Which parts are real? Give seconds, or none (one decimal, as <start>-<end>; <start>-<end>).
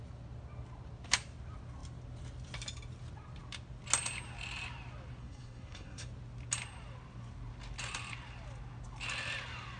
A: 0.0-5.2; 6.1-9.8